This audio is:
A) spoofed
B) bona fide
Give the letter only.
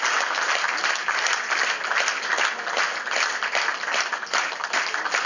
B